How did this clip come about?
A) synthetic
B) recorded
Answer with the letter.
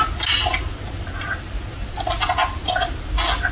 B